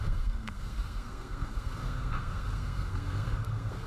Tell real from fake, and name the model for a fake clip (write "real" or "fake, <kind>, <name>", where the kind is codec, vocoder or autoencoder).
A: fake, codec, SNAC